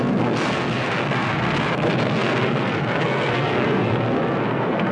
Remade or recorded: remade